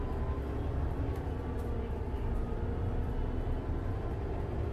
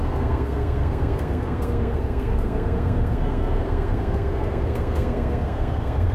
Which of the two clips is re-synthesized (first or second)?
second